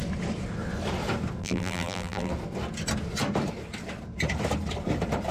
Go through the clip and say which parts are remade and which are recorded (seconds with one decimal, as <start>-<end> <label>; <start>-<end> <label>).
0.0-1.4 recorded; 1.4-2.3 remade; 2.3-5.3 recorded